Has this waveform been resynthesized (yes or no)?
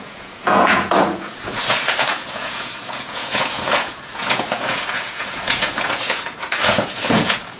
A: yes